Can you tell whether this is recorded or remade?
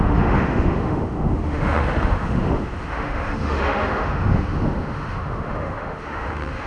remade